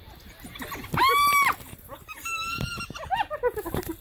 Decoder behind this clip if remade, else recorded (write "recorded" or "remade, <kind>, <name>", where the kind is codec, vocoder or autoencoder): recorded